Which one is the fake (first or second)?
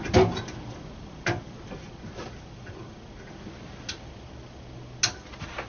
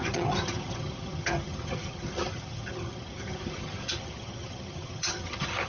second